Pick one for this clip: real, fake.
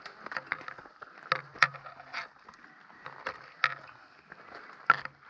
real